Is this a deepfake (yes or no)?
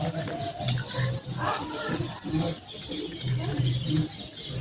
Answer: no